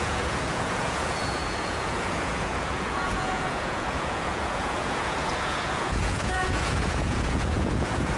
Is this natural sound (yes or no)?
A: no